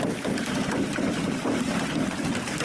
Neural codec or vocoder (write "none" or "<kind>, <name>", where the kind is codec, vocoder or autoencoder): none